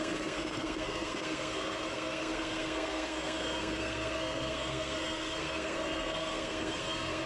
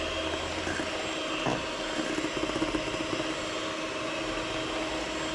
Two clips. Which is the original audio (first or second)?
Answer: second